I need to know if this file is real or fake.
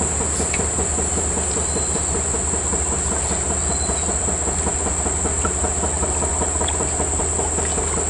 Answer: real